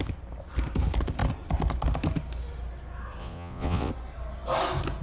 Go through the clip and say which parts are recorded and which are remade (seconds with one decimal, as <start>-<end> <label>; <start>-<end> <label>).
0.0-3.2 recorded; 3.2-3.9 remade; 3.9-5.0 recorded